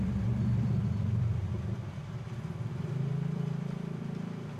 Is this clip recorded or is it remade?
remade